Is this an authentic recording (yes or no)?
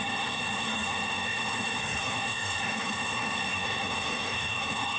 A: no